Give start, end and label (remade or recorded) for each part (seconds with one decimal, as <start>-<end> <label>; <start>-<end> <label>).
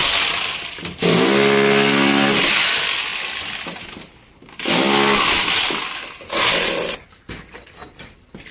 0.0-2.4 recorded; 2.4-3.1 remade; 3.1-8.0 recorded; 8.0-8.5 remade